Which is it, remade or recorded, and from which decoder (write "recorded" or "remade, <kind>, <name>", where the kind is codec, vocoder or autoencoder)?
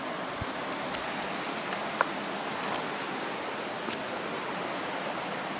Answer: recorded